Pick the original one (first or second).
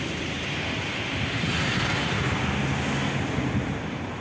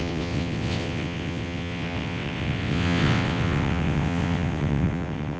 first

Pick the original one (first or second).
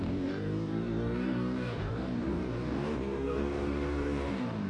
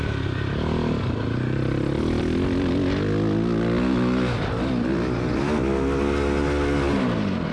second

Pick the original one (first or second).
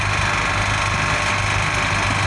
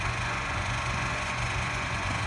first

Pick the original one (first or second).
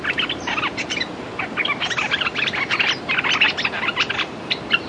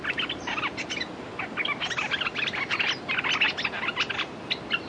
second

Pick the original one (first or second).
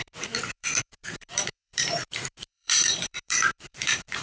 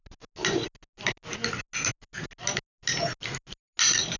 second